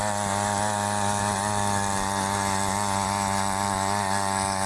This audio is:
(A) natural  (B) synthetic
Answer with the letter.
A